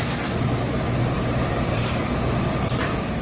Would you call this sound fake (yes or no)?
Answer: yes